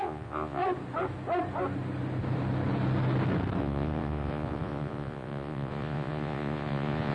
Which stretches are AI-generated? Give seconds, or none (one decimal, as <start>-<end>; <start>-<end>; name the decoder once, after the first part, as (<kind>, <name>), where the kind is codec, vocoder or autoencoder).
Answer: 0.0-0.6 (vocoder, Vocos); 3.6-7.1